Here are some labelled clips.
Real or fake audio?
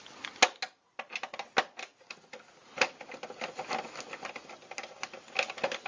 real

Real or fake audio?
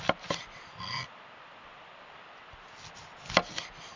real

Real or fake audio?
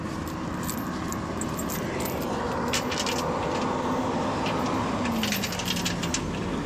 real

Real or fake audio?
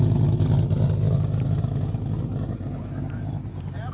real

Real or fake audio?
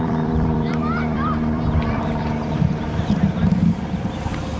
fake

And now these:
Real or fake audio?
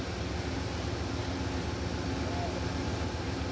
real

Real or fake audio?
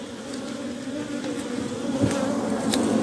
real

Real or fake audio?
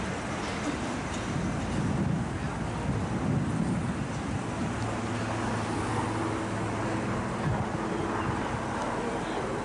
real